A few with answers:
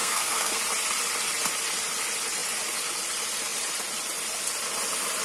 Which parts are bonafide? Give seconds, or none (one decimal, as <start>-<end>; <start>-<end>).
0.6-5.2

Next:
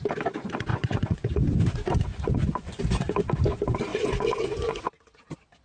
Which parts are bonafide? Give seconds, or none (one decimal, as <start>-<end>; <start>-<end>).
0.0-0.7; 1.3-2.1; 2.8-3.9; 4.8-5.6

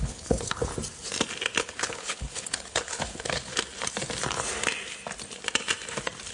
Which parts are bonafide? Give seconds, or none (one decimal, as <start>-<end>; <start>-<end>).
0.7-1.6; 3.5-6.3

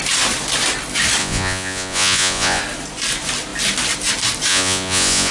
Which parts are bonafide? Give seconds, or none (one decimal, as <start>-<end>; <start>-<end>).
0.0-1.2; 2.6-4.5

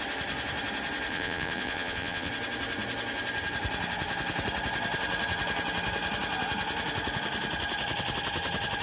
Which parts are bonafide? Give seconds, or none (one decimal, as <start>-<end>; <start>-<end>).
0.0-1.1; 2.3-8.8

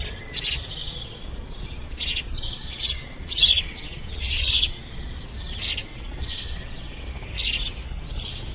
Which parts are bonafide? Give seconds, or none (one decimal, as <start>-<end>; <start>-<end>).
0.0-0.8; 5.2-5.8; 7.0-8.5

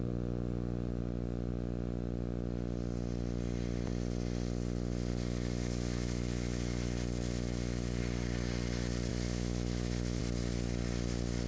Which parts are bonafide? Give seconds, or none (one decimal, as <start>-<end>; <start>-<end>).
0.0-5.1; 8.0-9.1; 10.2-11.5

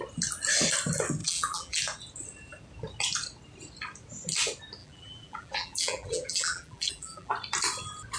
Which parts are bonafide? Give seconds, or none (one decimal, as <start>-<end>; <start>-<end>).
0.0-1.2; 1.8-4.8; 7.3-8.2